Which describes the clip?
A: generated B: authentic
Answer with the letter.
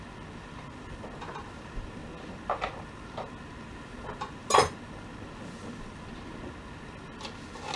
B